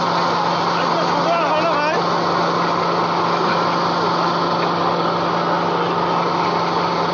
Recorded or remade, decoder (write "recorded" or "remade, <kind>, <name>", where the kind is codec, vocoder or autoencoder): recorded